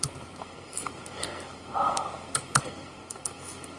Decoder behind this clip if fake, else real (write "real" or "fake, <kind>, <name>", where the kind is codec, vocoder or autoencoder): fake, codec, SNAC